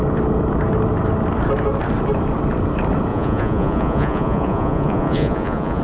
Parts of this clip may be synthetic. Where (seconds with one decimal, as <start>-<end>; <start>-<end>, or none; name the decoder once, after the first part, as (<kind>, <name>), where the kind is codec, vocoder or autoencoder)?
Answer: 3.1-5.8 (vocoder, Vocos)